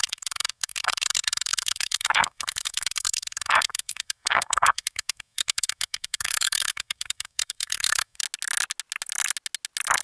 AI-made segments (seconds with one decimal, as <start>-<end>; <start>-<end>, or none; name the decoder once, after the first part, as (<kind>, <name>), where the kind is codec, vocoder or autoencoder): 0.0-8.2 (codec, SNAC)